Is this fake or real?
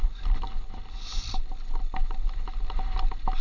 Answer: real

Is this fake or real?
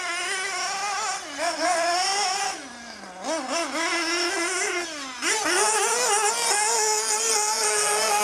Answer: real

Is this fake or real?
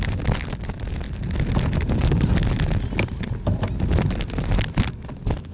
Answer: real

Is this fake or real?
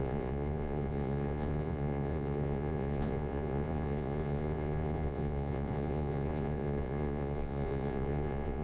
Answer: fake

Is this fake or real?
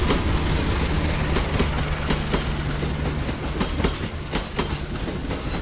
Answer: real